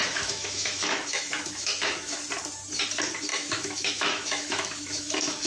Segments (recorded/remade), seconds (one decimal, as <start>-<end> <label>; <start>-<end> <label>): 0.0-2.2 remade; 2.2-3.3 recorded; 3.3-5.5 remade